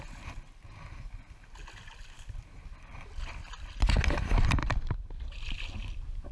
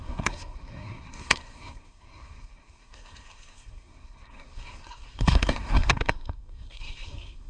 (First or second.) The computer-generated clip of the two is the second